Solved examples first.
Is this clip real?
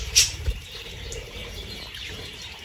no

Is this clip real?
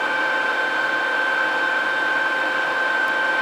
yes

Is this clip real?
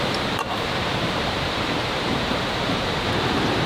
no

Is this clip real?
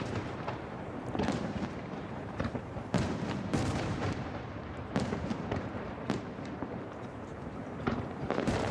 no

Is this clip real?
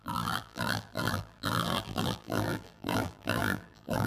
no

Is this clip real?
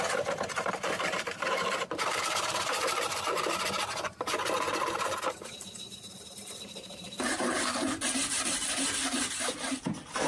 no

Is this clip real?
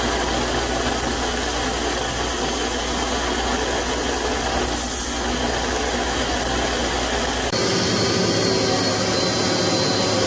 yes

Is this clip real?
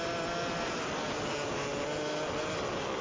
yes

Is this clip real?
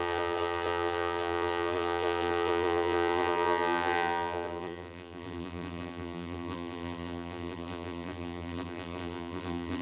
no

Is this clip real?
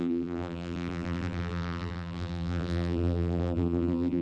no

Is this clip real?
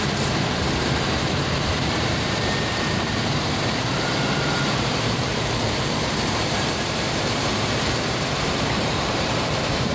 no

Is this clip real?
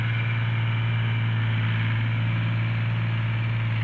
yes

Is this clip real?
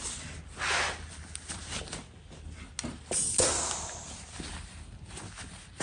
yes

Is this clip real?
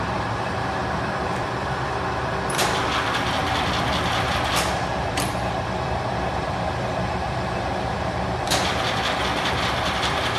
no